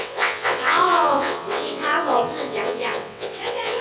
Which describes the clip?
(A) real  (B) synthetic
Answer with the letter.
B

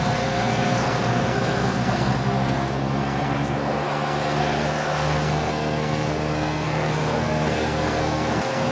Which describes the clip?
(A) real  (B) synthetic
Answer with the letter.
B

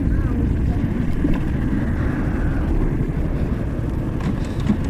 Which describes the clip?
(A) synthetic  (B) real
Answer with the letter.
B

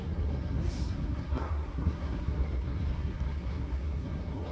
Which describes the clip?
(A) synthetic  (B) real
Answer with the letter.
A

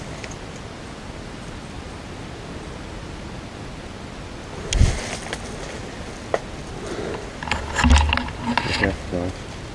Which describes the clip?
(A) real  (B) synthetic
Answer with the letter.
A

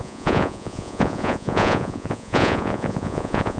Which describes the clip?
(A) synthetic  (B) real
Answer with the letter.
A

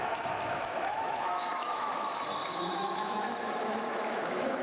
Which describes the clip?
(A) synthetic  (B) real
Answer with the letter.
A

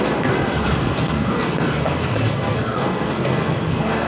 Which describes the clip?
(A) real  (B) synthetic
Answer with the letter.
B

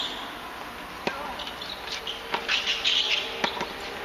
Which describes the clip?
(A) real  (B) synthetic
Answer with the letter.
A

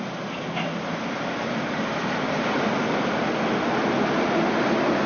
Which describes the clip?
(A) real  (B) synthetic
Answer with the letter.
A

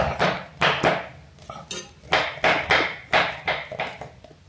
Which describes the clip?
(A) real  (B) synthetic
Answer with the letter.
A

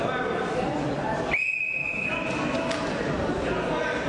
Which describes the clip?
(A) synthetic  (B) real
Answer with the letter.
B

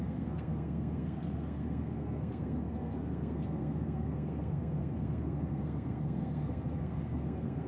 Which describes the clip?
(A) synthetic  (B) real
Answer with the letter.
A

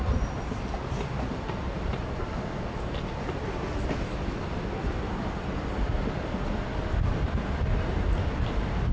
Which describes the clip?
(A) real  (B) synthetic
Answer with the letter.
A